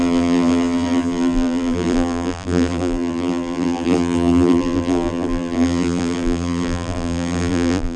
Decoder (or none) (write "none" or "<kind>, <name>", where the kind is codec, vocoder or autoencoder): vocoder, BigVGAN v2